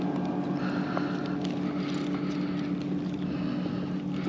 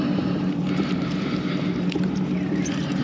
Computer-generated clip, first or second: second